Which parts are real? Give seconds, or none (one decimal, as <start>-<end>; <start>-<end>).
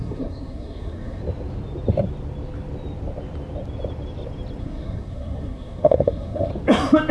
1.2-4.6; 6.5-7.1